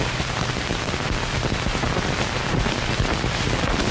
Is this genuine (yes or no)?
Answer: no